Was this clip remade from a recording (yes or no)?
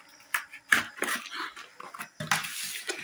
no